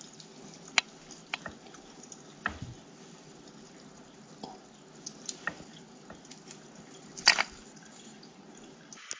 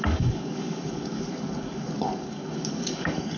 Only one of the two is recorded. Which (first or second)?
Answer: first